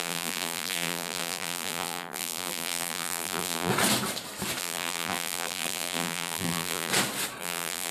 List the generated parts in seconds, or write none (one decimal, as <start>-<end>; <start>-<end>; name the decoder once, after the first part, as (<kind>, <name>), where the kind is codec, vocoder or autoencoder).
0.0-3.7 (vocoder, BigVGAN v2); 4.6-6.9; 7.4-7.9